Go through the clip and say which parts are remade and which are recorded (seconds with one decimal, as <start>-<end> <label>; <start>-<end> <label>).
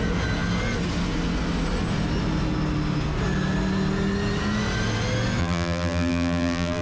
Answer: 0.0-5.4 recorded; 5.4-6.8 remade